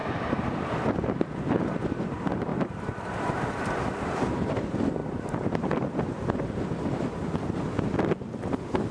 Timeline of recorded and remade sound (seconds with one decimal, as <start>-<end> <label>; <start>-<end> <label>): 0.0-0.7 remade; 0.7-2.5 recorded; 2.5-4.5 remade; 4.5-5.0 recorded; 5.0-5.6 remade; 5.6-8.9 recorded